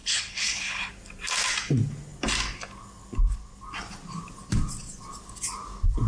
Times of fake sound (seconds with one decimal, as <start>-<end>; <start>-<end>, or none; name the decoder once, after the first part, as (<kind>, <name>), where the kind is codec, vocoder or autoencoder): 0.0-0.9 (codec, HILCodec)

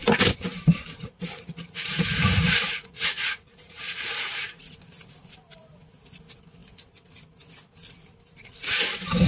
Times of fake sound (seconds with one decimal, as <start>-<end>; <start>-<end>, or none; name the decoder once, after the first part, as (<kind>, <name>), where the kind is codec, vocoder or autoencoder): 1.0-4.6 (vocoder, Vocos)

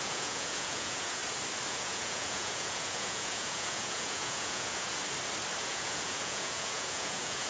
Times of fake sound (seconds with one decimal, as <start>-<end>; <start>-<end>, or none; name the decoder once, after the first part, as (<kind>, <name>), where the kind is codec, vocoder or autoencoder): 0.0-1.2 (vocoder, Vocos); 1.7-5.0; 5.6-7.5

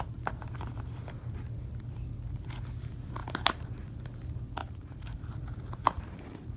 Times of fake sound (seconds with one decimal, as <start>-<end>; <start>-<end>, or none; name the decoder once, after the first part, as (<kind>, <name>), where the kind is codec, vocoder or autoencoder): 3.2-3.9 (vocoder, BigVGAN v2); 4.6-5.2

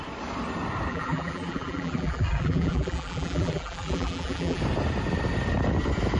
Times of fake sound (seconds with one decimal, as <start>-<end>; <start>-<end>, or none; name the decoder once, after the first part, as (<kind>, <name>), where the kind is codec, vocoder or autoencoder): 0.9-4.6 (vocoder, BigVGAN v2)